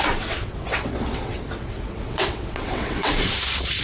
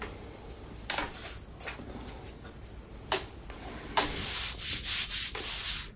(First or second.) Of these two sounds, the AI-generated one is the first